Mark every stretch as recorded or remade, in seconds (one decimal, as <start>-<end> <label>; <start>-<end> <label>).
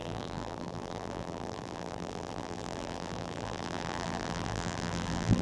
0.0-5.4 remade